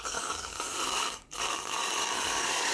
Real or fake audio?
fake